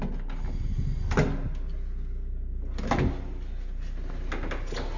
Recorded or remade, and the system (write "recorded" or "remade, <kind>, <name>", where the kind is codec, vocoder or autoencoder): recorded